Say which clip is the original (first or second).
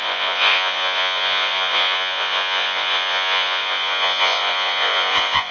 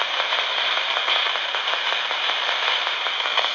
second